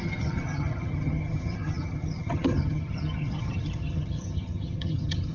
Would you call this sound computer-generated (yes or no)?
yes